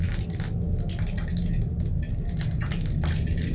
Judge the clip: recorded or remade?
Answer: recorded